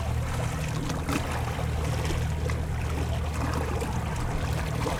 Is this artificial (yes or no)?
no